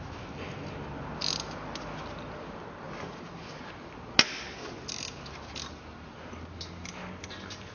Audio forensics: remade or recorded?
recorded